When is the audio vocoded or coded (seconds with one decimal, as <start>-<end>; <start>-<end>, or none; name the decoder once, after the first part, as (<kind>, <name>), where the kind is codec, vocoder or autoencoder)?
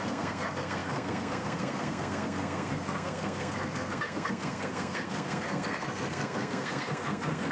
0.0-7.5 (codec, SNAC)